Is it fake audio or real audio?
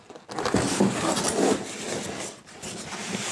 real